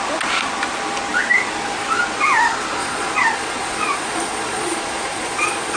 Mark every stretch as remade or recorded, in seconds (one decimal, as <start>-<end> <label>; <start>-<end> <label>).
0.0-2.8 recorded; 2.8-5.8 remade